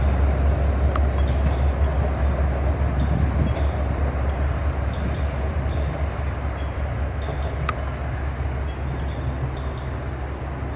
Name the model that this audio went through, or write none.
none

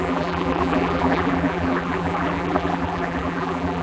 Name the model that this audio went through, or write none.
vocoder, BigVGAN v2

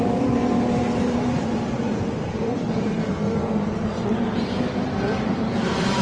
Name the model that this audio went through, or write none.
vocoder, BigVGAN v2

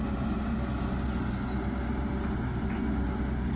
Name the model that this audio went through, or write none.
none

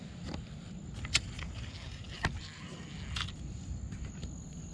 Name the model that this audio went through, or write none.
none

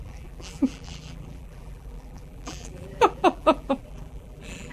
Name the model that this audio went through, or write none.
vocoder, BigVGAN v2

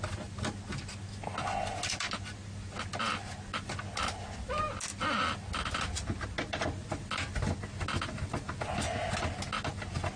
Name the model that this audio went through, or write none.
none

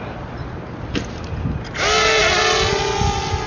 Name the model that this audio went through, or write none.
none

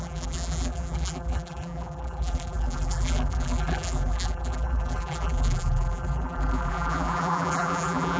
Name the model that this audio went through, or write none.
vocoder, BigVGAN v2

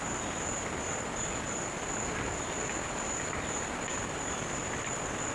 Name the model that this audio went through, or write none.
none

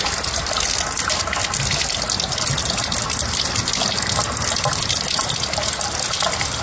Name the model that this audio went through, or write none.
none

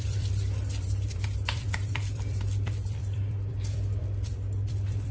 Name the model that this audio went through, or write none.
vocoder, BigVGAN v2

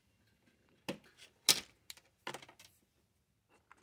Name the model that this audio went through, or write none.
none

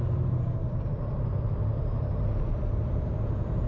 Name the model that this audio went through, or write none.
vocoder, BigVGAN v2